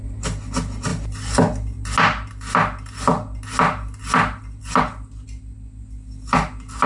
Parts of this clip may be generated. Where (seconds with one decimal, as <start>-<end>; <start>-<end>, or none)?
none